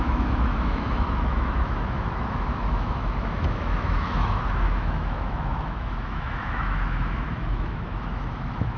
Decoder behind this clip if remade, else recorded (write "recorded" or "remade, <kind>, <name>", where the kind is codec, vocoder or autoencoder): remade, autoencoder, DAC-VAE